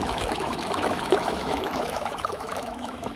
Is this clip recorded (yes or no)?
no